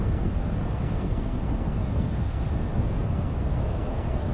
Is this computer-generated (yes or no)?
yes